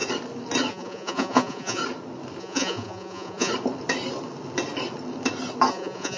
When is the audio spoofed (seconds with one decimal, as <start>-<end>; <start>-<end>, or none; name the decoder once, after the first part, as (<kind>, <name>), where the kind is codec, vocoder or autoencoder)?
0.7-1.8 (vocoder, Vocos); 2.4-3.5; 5.7-6.2